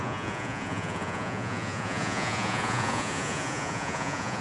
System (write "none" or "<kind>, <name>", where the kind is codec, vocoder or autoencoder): vocoder, Vocos